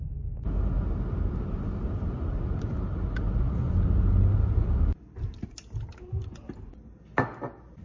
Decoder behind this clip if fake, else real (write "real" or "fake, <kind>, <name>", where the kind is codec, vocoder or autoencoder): real